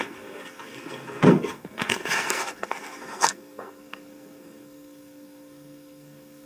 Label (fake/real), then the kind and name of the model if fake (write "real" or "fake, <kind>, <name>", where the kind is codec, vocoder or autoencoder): fake, codec, SNAC